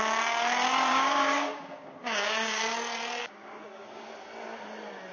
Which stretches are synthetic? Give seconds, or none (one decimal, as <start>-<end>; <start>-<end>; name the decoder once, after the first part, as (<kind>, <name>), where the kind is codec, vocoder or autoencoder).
0.9-2.6 (codec, DAC); 3.2-4.1